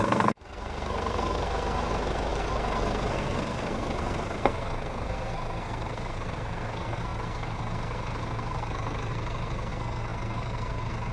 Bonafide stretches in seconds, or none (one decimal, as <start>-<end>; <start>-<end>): none